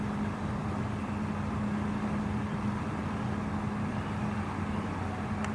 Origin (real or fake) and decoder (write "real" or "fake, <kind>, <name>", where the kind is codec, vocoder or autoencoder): real